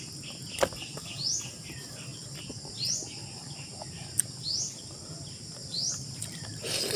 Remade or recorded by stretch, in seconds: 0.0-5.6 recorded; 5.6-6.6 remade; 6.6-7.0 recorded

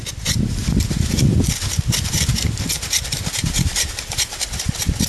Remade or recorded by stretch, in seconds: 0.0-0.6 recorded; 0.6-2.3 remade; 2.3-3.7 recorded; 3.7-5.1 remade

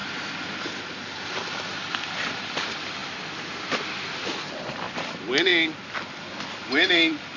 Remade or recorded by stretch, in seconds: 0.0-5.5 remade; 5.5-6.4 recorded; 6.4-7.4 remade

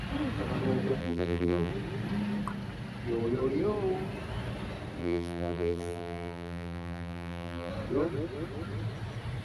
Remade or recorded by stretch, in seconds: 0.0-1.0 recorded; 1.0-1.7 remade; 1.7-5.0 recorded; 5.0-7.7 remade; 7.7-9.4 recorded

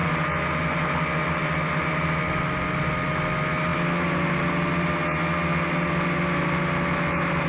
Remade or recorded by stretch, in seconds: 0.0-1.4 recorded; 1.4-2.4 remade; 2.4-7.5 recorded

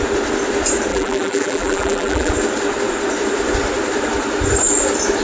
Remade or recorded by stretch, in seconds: 0.0-0.9 recorded; 0.9-2.3 remade; 2.3-5.2 recorded